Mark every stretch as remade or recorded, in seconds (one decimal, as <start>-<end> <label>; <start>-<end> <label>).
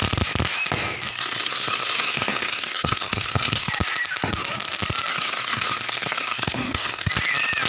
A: 0.0-1.1 recorded; 1.1-3.7 remade; 3.7-5.1 recorded; 5.1-7.1 remade; 7.1-7.7 recorded